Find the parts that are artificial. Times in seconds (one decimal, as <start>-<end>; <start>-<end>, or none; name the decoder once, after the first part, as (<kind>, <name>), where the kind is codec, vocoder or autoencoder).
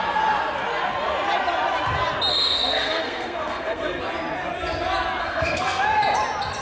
2.3-4.0 (codec, SNAC); 5.2-5.8